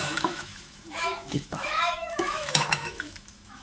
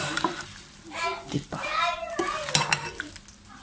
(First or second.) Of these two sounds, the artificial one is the first